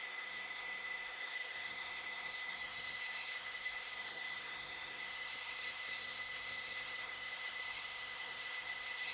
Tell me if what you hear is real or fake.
fake